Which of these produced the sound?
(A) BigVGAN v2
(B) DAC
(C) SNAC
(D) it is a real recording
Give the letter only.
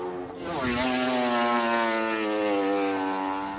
D